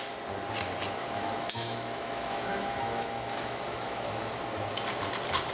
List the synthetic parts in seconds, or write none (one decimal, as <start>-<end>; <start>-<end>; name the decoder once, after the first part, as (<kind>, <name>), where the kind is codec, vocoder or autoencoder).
1.0-4.3 (autoencoder, DAC-VAE)